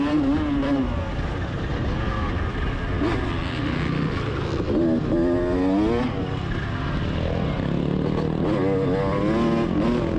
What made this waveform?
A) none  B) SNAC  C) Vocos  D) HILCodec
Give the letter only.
A